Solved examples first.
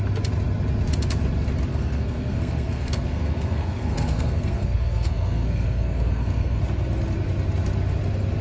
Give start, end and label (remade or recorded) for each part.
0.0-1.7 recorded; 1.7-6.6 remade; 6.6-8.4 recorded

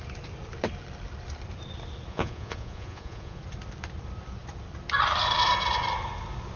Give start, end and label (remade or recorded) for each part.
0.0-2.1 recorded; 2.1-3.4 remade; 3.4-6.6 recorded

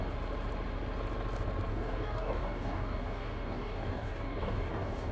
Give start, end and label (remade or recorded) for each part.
0.0-1.7 recorded; 1.7-5.1 remade